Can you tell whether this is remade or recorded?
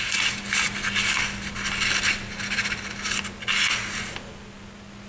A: recorded